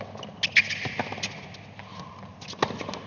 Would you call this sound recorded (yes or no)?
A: yes